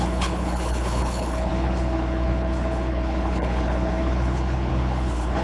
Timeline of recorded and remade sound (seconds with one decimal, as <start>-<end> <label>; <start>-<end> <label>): 0.0-5.4 remade